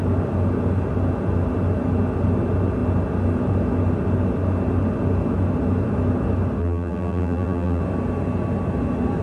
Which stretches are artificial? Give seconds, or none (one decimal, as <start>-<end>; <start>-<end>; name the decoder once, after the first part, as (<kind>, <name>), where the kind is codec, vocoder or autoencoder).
6.6-7.8 (vocoder, BigVGAN v2)